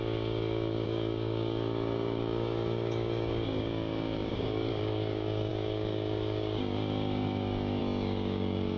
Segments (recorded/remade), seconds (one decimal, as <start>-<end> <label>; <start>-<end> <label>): 0.0-8.8 remade